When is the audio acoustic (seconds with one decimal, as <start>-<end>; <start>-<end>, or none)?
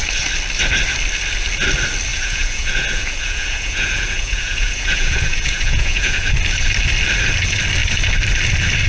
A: 0.0-2.1; 6.3-8.9